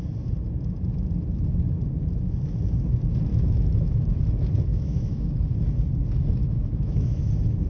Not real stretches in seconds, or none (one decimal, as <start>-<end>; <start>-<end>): 3.3-4.2; 4.7-5.4; 6.4-7.3